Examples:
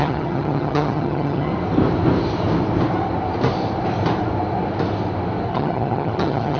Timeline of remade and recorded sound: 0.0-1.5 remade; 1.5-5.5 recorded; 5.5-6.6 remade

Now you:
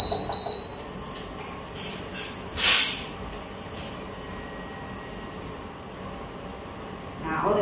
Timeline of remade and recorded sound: 0.0-7.6 recorded

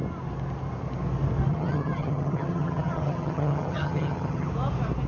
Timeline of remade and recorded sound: 0.0-1.5 recorded; 1.5-4.5 remade; 4.5-5.1 recorded

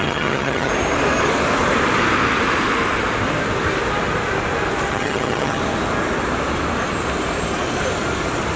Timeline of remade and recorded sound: 0.0-0.7 remade; 0.7-4.9 recorded; 4.9-5.6 remade; 5.6-8.6 recorded

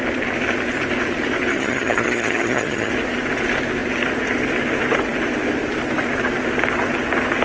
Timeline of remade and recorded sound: 0.0-1.5 recorded; 1.5-2.9 remade; 2.9-7.4 recorded

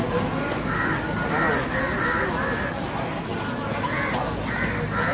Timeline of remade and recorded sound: 0.0-5.1 recorded

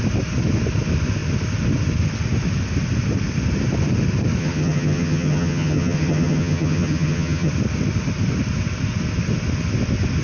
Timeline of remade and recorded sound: 0.0-4.4 recorded; 4.4-7.5 remade; 7.5-10.2 recorded

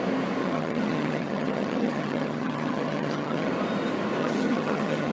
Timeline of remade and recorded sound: 0.0-0.4 recorded; 0.4-3.5 remade; 3.5-4.2 recorded; 4.2-5.1 remade